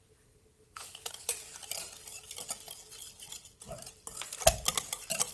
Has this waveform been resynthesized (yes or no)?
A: no